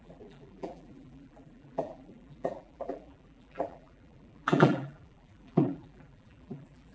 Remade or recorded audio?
remade